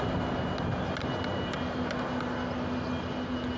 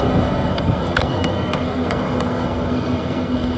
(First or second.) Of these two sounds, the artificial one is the second